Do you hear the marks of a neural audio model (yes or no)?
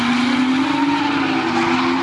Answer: no